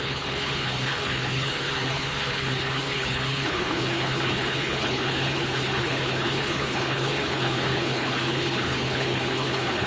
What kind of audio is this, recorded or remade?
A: remade